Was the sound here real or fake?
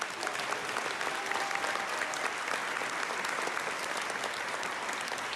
real